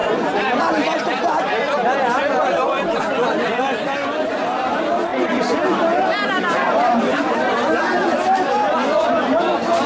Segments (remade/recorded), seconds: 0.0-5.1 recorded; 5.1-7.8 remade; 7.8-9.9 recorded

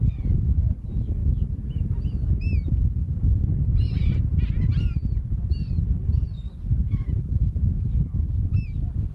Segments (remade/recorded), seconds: 0.0-1.2 remade; 1.2-3.3 recorded; 3.3-6.4 remade; 6.4-7.4 recorded; 7.4-9.1 remade

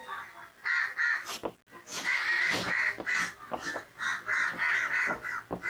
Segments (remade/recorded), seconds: 0.0-1.9 recorded; 1.9-2.5 remade; 2.5-5.7 recorded